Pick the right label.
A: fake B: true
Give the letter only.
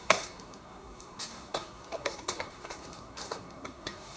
A